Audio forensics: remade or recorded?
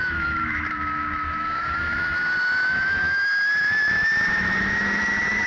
remade